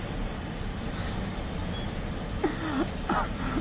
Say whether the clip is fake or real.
fake